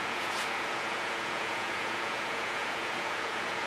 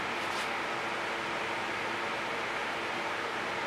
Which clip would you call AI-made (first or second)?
first